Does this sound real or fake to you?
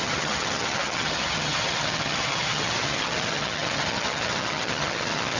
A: fake